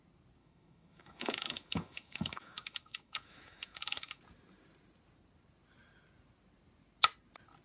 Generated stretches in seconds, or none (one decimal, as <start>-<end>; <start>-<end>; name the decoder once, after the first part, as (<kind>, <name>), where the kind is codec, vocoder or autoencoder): 0.4-4.2 (autoencoder, DAC-VAE)